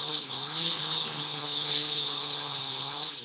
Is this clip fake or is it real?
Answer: fake